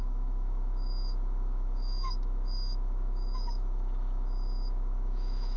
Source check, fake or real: fake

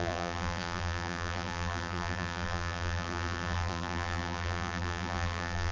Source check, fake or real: fake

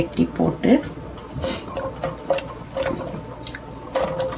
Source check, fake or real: real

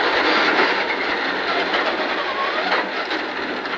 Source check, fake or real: real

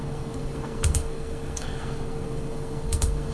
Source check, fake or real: fake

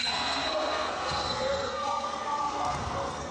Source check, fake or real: fake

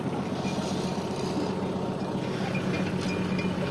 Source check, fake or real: real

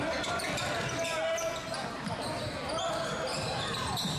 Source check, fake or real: real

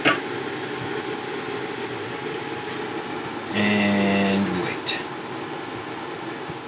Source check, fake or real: real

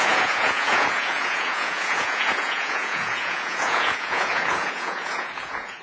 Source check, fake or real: fake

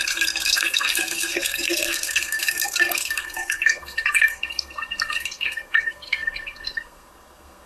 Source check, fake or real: fake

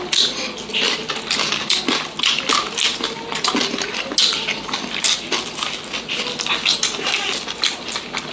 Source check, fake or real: real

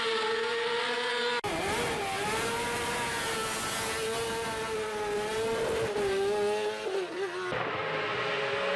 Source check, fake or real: real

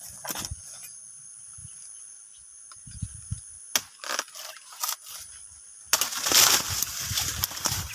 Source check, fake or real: real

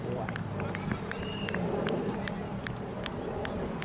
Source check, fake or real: real